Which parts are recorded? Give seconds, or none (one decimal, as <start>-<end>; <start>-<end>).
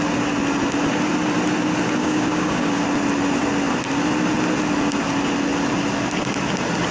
0.0-2.0; 2.8-6.9